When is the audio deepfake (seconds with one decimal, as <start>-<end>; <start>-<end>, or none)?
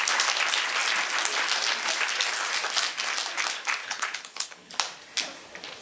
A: 3.8-4.7